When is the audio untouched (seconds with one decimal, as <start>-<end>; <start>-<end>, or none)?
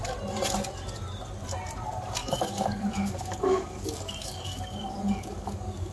0.0-2.2